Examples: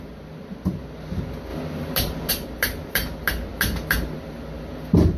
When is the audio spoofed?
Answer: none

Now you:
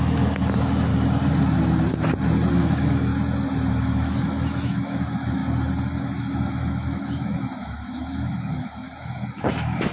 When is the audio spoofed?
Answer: 0.0-0.9 (autoencoder, DAC-VAE); 2.5-3.1; 3.7-5.4; 6.0-9.9

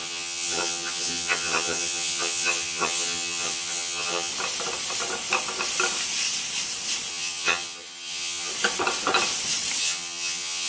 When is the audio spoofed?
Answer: 0.0-4.3 (vocoder, HiFi-GAN); 7.1-8.5; 9.8-10.7

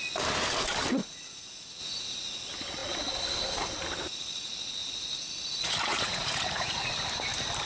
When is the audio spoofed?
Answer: 1.0-1.8 (vocoder, Vocos); 4.8-6.9

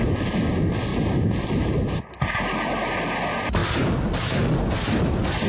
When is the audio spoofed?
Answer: 0.9-2.9 (vocoder, BigVGAN v2)

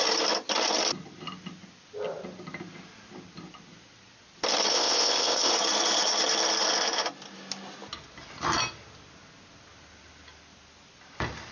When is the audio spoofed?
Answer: 4.7-5.5 (codec, ZipCodec)

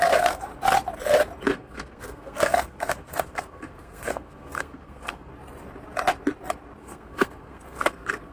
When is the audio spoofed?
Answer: 0.0-0.5 (codec, SNAC); 1.5-5.3; 6.8-8.3